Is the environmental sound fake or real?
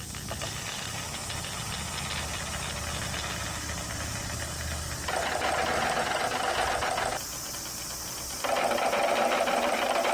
real